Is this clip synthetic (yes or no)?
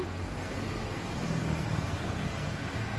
yes